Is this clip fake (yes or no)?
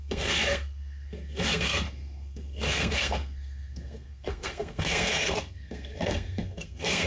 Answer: yes